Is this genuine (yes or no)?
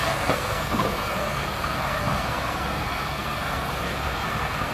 no